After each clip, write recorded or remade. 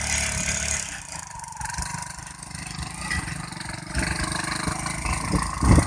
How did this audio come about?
recorded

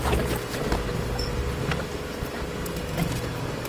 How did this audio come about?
recorded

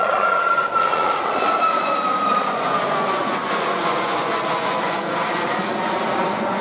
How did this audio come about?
remade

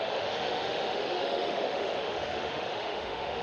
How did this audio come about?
remade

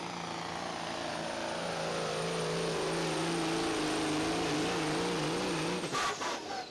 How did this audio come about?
recorded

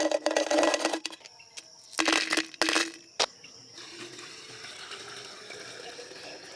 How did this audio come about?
recorded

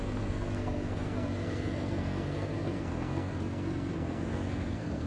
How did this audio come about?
remade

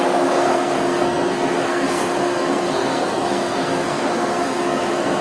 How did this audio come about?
remade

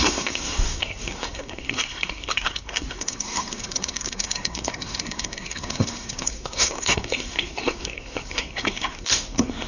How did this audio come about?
remade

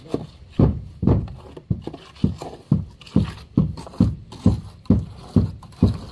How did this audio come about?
recorded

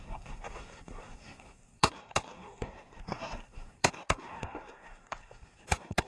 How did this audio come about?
remade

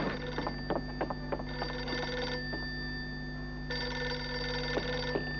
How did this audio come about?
recorded